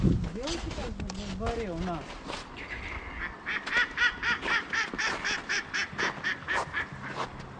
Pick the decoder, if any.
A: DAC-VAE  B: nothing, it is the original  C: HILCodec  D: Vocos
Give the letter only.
B